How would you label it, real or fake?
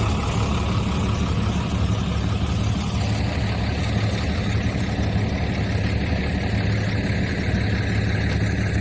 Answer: real